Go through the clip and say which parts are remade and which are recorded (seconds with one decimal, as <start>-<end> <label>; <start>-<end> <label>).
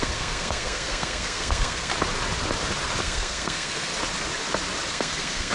0.0-1.9 remade; 1.9-3.0 recorded; 3.0-3.9 remade; 3.9-4.9 recorded; 4.9-5.5 remade